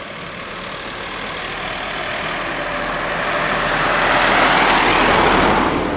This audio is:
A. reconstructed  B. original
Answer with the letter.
B